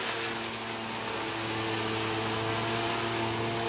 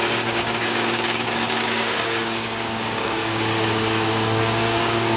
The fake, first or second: second